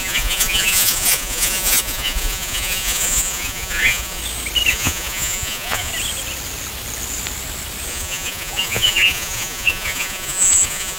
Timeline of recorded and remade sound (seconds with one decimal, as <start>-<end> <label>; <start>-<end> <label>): 0.0-4.2 remade; 4.2-4.7 recorded; 4.7-5.9 remade; 5.9-7.9 recorded; 7.9-11.0 remade